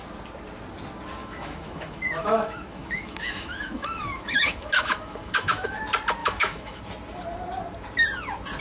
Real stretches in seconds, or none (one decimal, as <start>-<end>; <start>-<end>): 0.0-1.2; 5.8-6.2; 6.8-8.6